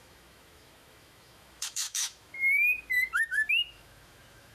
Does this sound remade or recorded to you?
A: remade